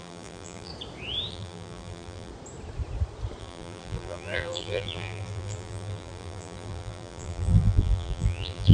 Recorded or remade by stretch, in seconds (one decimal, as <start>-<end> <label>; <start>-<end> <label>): 0.0-0.7 remade; 0.7-1.3 recorded; 1.3-2.3 remade; 2.3-3.4 recorded; 3.4-8.7 remade